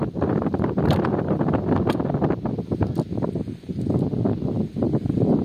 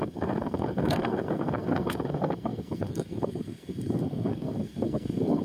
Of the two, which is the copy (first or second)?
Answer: second